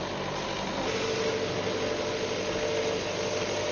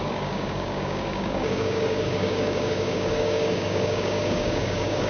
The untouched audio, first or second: first